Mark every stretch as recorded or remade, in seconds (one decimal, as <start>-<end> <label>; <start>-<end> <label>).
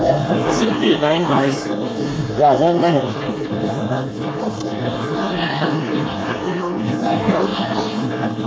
0.0-8.5 remade